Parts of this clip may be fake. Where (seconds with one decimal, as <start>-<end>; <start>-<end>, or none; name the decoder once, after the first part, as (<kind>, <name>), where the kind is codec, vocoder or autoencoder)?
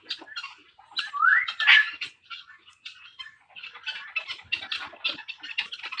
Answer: 1.3-3.7 (vocoder, Vocos)